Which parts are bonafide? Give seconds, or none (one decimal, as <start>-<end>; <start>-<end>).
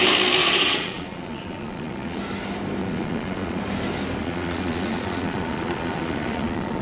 0.0-0.4; 2.2-2.8; 3.6-4.2